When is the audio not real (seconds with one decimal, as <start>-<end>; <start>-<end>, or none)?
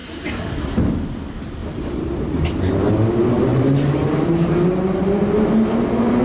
0.0-0.6; 1.6-2.9; 3.5-4.5